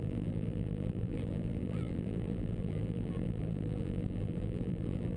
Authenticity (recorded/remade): remade